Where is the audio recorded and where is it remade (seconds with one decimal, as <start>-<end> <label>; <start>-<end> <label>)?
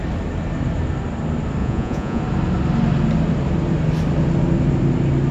0.0-1.6 recorded; 1.6-2.2 remade; 2.2-5.3 recorded